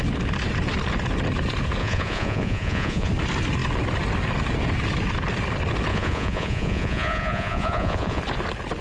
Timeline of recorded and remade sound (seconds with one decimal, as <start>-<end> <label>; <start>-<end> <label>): 0.0-1.8 recorded; 1.8-3.1 remade; 3.1-5.9 recorded; 5.9-8.2 remade; 8.2-8.8 recorded